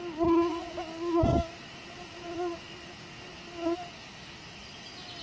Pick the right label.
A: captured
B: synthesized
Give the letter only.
A